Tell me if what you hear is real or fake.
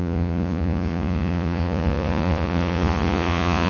fake